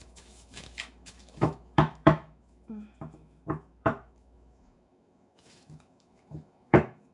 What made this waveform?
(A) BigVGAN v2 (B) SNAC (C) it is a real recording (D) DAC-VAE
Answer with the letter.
D